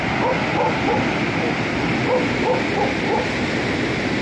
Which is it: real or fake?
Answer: real